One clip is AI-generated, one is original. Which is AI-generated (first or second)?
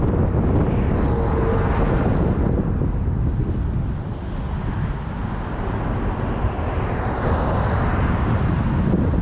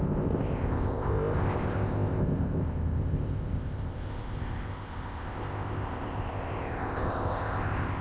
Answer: second